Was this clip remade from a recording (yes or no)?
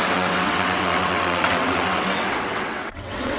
yes